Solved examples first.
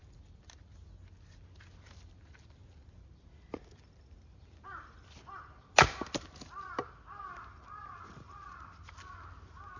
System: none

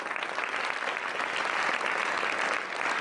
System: none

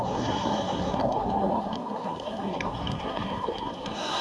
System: codec, SNAC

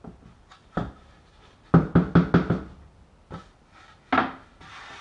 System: none